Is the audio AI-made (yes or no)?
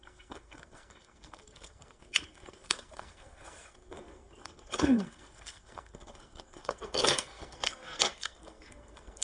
yes